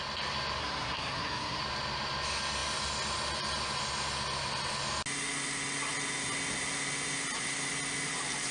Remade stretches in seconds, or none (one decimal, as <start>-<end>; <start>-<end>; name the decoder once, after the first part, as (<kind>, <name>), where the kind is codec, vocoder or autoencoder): 0.6-1.6 (codec, SNAC)